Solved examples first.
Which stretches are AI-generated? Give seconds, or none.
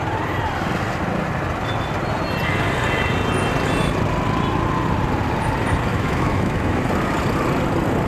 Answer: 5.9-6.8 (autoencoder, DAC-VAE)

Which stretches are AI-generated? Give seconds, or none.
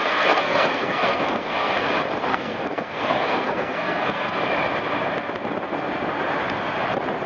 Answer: 0.0-1.9 (codec, SNAC); 2.3-4.4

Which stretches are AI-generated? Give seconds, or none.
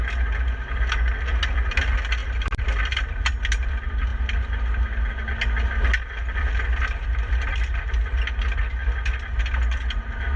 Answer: none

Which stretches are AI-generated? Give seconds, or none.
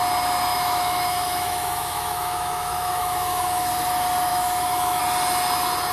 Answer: 0.5-3.7 (autoencoder, DAC-VAE); 4.3-5.0